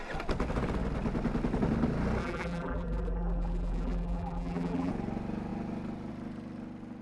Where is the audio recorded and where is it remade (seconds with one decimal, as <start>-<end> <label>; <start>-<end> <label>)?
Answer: 0.0-2.2 recorded; 2.2-4.9 remade; 4.9-7.0 recorded